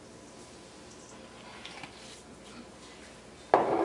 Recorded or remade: recorded